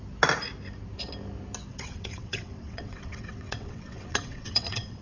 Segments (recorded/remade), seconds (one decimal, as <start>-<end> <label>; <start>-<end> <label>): 0.0-1.7 recorded; 1.7-5.0 remade